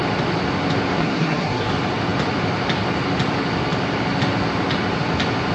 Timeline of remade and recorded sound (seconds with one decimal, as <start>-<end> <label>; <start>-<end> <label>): 0.0-0.9 recorded; 0.9-1.7 remade; 1.7-5.5 recorded